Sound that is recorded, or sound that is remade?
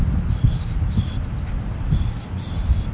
recorded